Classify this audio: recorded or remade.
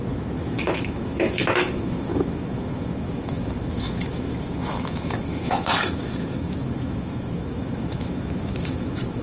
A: remade